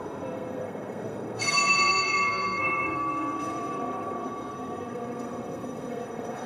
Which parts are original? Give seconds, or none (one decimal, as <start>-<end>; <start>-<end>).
none